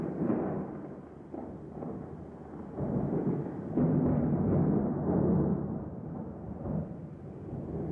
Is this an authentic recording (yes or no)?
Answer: yes